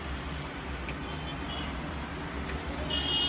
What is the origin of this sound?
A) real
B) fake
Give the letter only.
A